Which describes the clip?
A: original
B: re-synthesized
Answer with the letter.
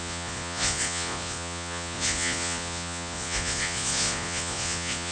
B